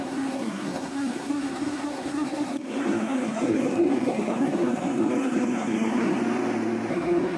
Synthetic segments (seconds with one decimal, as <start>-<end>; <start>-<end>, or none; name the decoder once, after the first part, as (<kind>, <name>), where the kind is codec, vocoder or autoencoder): 0.0-6.2 (codec, SNAC); 6.9-7.4